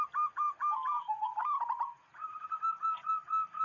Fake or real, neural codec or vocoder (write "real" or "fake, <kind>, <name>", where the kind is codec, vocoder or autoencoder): real